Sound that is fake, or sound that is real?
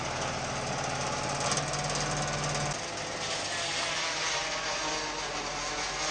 real